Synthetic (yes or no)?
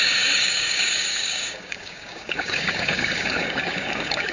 yes